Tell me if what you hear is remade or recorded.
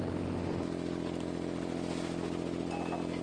recorded